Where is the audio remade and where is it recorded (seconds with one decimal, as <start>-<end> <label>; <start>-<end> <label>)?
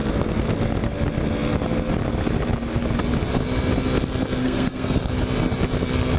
0.0-4.4 recorded; 4.4-5.1 remade; 5.1-6.2 recorded